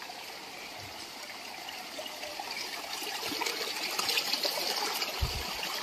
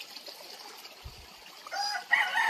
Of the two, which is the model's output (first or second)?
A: first